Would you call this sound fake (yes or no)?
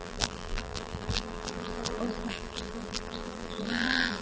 yes